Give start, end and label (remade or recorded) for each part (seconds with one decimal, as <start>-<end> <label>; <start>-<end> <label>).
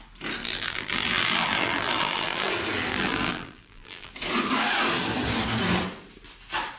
0.0-0.4 recorded; 0.4-2.5 remade; 2.5-2.9 recorded; 2.9-4.1 remade; 4.1-6.8 recorded